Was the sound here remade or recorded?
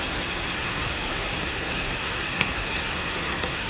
remade